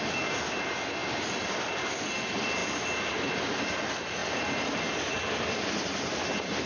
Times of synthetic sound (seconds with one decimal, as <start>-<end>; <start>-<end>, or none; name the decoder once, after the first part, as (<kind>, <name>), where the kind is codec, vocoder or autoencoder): 4.2-4.8 (vocoder, BigVGAN v2)